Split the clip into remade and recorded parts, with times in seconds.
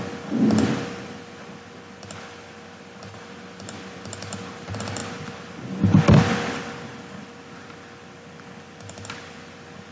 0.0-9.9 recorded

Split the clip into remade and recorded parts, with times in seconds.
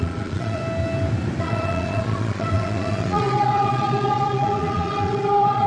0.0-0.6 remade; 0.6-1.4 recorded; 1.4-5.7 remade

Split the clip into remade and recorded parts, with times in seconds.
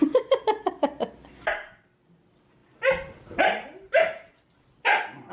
0.0-5.3 recorded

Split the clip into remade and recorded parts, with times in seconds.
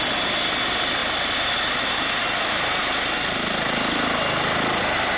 0.0-5.2 recorded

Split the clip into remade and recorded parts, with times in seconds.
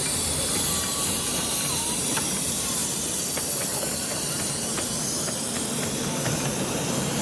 0.0-0.9 recorded; 0.9-1.5 remade; 1.5-7.2 recorded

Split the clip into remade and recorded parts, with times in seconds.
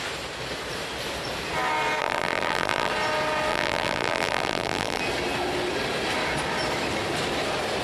0.0-2.0 recorded; 2.0-2.9 remade; 2.9-3.5 recorded; 3.5-5.0 remade; 5.0-7.8 recorded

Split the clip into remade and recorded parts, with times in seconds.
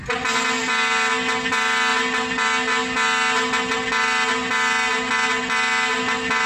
0.0-6.5 recorded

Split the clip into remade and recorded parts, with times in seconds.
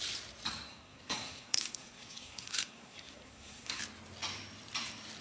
0.0-0.7 recorded; 0.7-3.8 remade; 3.8-5.2 recorded